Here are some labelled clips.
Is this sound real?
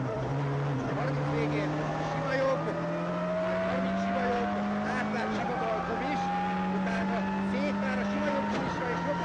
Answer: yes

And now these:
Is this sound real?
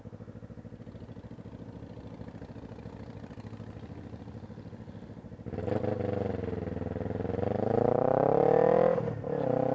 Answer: yes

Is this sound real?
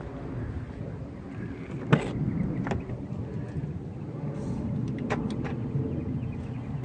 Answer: yes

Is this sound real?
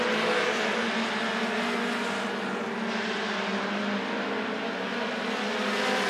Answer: yes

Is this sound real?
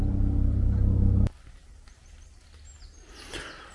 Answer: yes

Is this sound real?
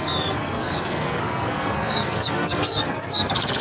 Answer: no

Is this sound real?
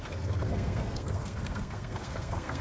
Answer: no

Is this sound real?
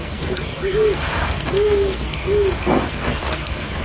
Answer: no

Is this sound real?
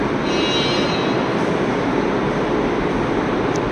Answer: no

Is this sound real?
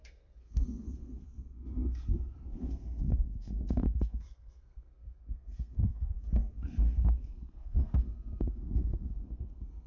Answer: no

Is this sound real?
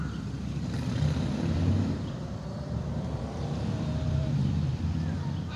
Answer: no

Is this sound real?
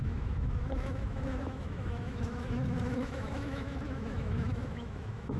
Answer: no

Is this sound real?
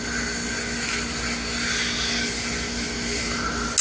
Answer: yes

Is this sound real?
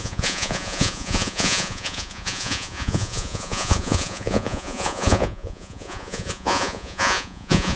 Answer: no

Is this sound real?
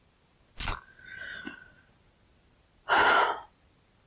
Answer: yes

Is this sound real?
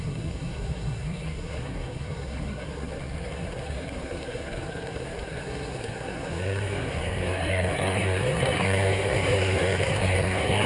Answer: no